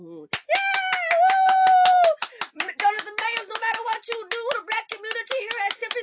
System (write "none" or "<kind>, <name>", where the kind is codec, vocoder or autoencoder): none